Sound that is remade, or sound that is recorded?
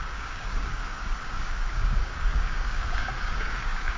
remade